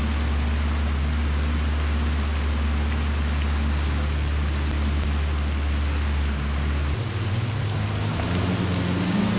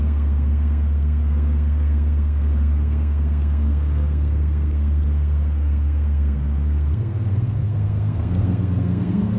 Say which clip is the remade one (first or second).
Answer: second